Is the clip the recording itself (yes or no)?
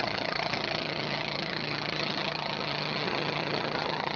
no